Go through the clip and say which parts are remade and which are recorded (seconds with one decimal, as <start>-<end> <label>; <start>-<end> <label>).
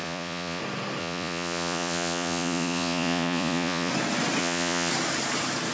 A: 0.0-0.6 remade; 0.6-1.0 recorded; 1.0-3.9 remade; 3.9-4.4 recorded; 4.4-4.9 remade; 4.9-5.7 recorded